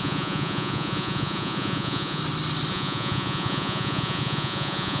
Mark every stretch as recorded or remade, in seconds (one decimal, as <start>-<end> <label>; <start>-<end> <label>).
0.0-2.2 remade; 2.2-2.7 recorded; 2.7-5.0 remade